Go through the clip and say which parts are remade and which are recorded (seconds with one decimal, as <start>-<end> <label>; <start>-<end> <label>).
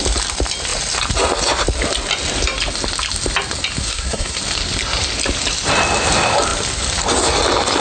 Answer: 0.0-3.8 recorded; 3.8-4.4 remade; 4.4-7.8 recorded